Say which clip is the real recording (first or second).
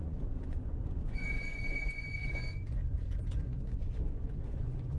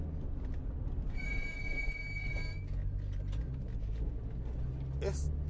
second